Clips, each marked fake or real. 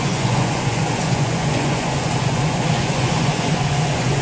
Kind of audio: fake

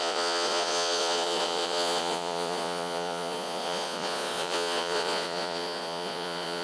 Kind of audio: fake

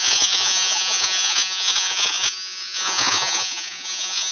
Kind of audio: fake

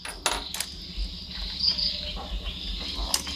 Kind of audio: real